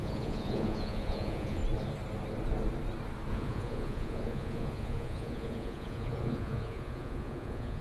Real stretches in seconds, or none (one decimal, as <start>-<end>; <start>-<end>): 1.6-3.3